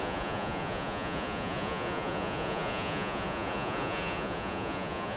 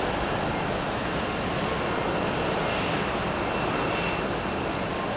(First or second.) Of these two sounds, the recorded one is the second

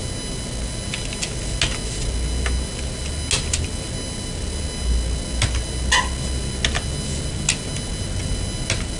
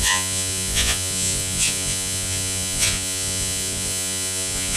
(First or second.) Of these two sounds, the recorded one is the first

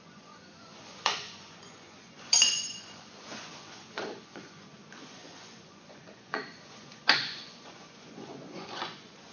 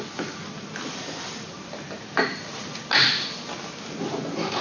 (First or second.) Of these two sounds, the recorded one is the second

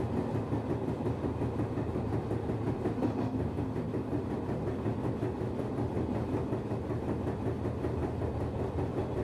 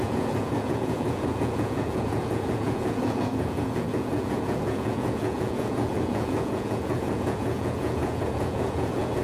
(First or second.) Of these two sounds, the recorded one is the first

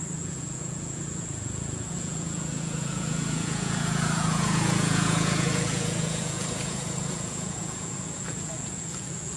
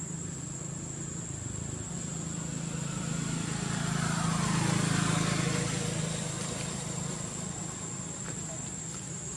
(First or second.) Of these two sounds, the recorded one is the second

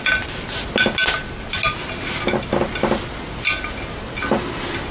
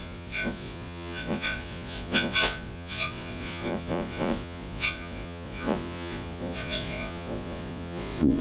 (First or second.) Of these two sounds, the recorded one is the first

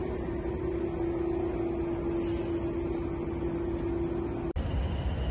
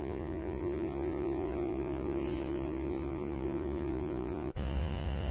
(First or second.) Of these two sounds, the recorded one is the first